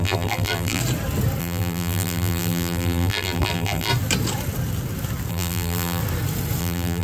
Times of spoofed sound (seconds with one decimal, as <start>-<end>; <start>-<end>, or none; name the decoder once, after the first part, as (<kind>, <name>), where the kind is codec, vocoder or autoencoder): 0.0-0.8 (vocoder, BigVGAN v2); 1.4-3.9; 5.3-6.0; 6.6-7.0